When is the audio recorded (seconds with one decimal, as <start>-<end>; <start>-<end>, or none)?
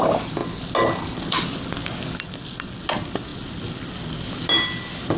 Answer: 0.0-5.2